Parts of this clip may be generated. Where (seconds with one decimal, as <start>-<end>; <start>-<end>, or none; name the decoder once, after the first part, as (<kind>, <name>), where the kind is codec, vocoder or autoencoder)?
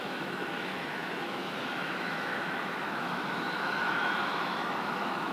0.0-5.3 (autoencoder, DAC-VAE)